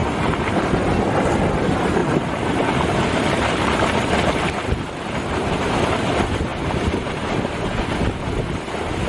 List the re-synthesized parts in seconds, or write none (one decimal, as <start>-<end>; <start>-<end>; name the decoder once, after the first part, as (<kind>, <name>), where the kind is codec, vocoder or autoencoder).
2.0-5.2 (vocoder, BigVGAN v2)